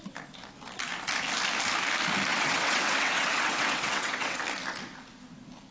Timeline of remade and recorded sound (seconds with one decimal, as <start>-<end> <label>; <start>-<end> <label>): 0.0-2.3 recorded; 2.3-4.4 remade; 4.4-5.7 recorded